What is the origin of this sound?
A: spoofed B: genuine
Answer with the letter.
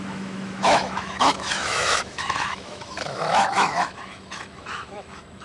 A